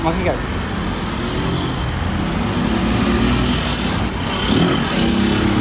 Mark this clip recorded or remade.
recorded